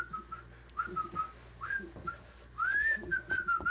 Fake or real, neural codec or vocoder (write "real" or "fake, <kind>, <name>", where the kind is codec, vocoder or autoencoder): real